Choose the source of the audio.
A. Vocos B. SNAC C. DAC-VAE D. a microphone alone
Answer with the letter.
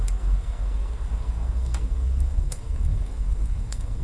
B